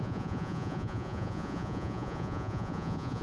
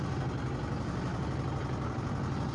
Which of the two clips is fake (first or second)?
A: first